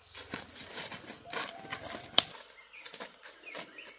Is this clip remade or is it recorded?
recorded